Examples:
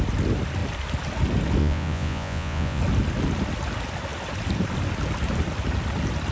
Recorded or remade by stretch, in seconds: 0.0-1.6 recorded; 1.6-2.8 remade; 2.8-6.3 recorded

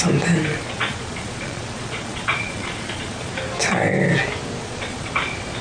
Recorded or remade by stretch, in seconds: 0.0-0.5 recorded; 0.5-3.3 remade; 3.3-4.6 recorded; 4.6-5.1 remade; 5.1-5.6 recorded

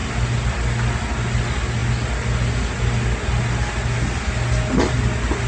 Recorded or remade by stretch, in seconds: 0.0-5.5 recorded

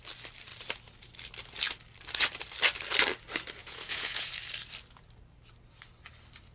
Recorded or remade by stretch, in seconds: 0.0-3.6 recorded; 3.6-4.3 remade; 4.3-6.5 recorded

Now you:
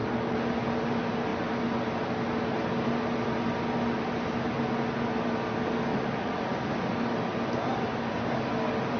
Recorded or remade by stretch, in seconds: 0.0-5.9 recorded; 5.9-6.4 remade; 6.4-9.0 recorded

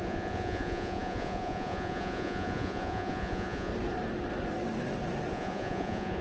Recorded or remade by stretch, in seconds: 0.0-3.7 remade; 3.7-5.3 recorded; 5.3-6.2 remade